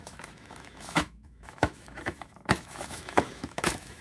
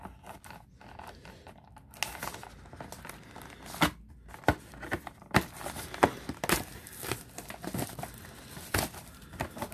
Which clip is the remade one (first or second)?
first